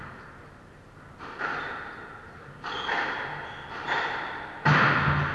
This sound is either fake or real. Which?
real